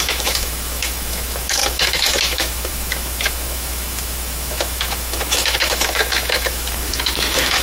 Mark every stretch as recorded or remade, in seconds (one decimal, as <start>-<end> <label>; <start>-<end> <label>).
0.0-7.6 remade